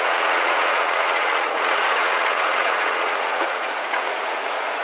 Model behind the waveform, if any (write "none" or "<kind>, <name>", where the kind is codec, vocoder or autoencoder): vocoder, Vocos